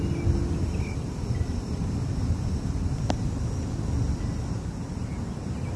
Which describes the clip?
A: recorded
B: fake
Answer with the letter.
A